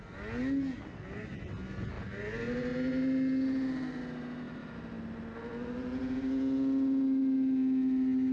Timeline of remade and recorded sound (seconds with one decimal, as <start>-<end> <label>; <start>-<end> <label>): 0.0-8.3 recorded